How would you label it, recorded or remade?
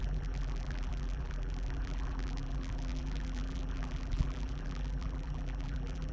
remade